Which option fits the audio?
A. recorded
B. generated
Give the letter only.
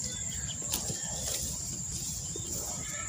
A